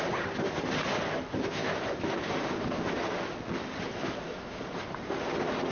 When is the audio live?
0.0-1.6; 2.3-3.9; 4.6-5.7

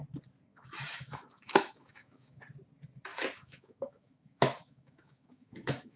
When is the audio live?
0.0-0.5; 2.4-3.1

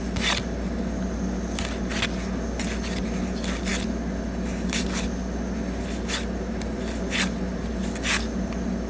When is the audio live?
0.0-8.9

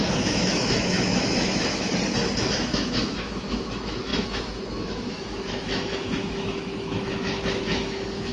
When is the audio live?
1.9-2.4

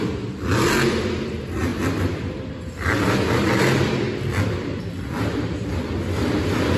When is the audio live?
0.0-6.8

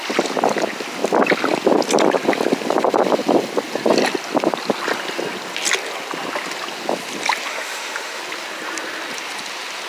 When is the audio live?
0.0-7.5; 8.2-9.9

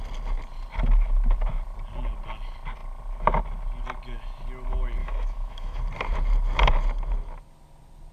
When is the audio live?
0.0-5.0; 5.8-8.1

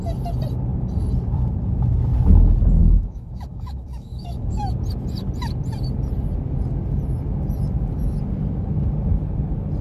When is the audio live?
0.0-2.8; 4.7-9.8